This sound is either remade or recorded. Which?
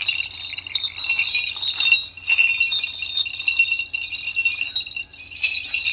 recorded